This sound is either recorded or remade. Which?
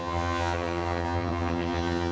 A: remade